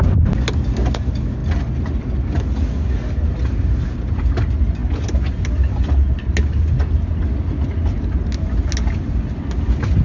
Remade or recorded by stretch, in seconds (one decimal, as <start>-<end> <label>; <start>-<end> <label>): 0.0-10.0 recorded